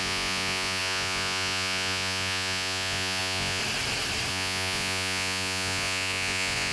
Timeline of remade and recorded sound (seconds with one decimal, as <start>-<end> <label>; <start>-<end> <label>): 0.0-3.6 remade; 3.6-4.3 recorded; 4.3-6.7 remade